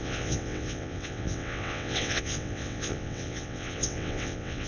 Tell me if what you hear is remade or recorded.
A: remade